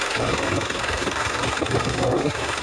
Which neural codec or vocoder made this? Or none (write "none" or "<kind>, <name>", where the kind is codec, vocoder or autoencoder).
codec, SNAC